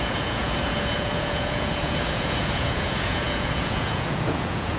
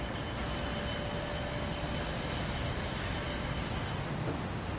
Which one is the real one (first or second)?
second